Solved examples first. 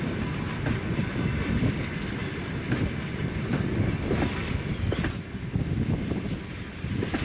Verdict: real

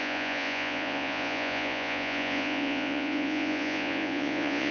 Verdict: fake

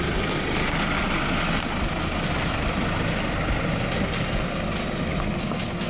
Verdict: real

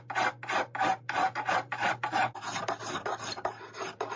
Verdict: real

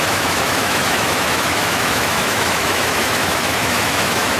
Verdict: fake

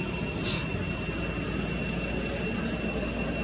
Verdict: real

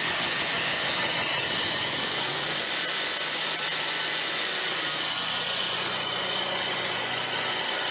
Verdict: fake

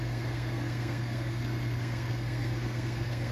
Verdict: fake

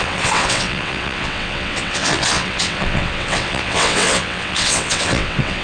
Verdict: fake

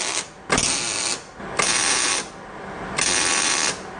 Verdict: real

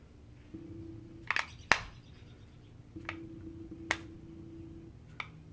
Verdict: real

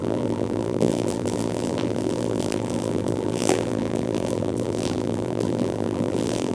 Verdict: fake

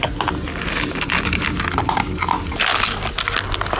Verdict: real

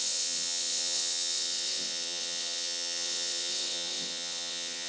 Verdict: fake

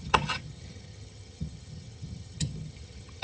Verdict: fake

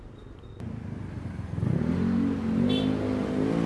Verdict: real